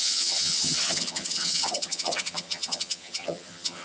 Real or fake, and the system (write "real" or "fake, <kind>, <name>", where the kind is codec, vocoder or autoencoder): fake, vocoder, HiFi-GAN